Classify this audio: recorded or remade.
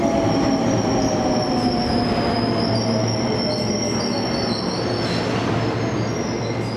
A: recorded